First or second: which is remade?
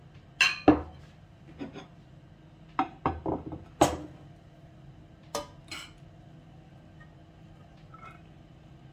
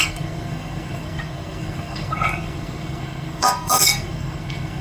second